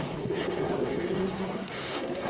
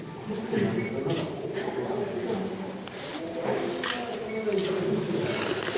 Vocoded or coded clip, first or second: first